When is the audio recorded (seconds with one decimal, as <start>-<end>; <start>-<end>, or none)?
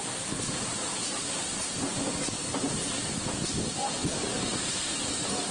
0.0-5.5